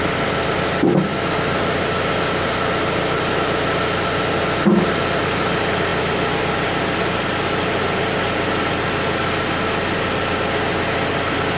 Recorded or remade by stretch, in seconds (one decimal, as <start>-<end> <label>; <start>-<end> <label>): 0.0-11.6 recorded